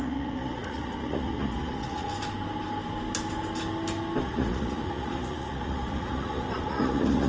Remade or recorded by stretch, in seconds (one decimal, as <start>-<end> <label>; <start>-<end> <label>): 0.0-2.1 remade; 2.1-4.2 recorded; 4.2-7.3 remade